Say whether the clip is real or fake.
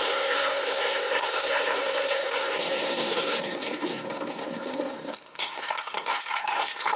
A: fake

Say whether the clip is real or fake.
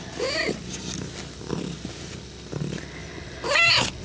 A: real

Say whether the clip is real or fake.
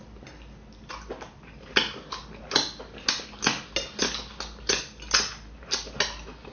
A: real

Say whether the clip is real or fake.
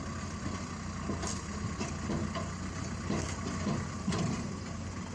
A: real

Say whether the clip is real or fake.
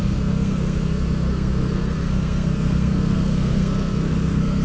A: fake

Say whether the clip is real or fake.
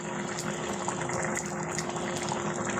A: real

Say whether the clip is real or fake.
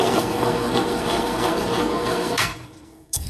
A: fake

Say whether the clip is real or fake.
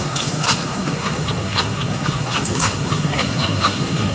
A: fake